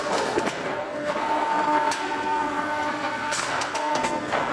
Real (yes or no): no